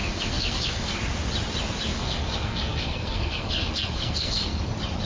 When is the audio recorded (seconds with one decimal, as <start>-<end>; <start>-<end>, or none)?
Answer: 1.0-1.9; 4.6-5.1

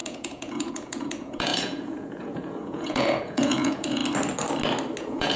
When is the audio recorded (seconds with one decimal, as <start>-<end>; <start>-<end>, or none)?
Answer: 4.0-5.0

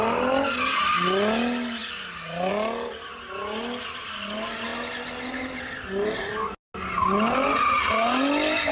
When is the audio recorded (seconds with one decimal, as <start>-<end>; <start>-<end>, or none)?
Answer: 0.0-8.7

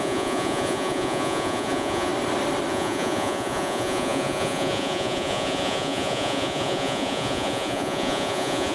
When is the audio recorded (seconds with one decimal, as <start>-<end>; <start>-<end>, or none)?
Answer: 2.1-2.7